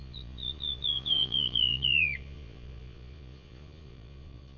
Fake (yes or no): yes